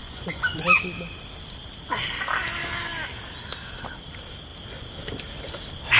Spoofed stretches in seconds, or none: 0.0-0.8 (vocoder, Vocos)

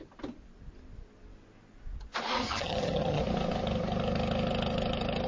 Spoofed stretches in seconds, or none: 2.4-3.2 (vocoder, HiFi-GAN)

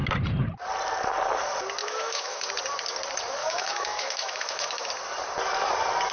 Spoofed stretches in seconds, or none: 1.8-2.5 (autoencoder, DAC-VAE); 3.4-4.9

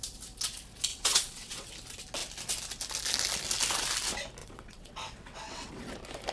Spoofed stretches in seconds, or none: 0.9-1.7 (vocoder, WaveNeXt); 4.4-5.7

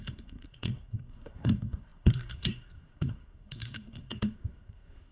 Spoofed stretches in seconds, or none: 0.0-5.1 (codec, SNAC)

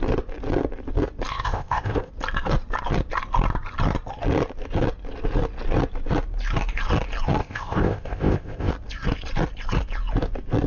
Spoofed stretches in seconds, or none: 1.3-2.1 (codec, ZipCodec); 7.4-8.7

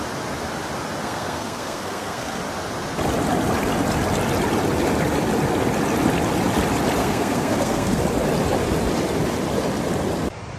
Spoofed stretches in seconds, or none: 1.0-2.4 (codec, SNAC); 7.0-8.0

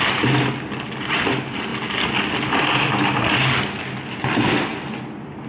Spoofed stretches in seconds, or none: none